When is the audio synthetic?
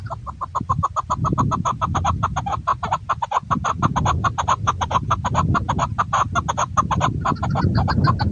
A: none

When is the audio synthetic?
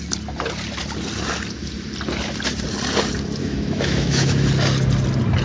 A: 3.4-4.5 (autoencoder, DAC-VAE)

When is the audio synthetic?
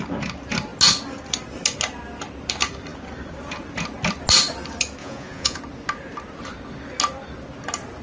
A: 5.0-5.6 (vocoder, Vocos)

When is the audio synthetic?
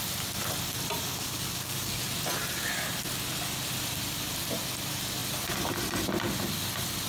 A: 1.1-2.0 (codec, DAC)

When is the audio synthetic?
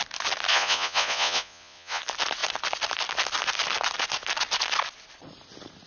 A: 0.5-2.0 (vocoder, Vocos)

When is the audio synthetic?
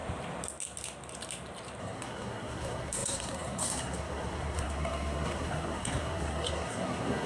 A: 1.8-7.3 (codec, SNAC)